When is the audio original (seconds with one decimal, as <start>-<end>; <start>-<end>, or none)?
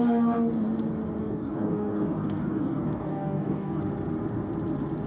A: 0.0-1.2; 3.8-5.1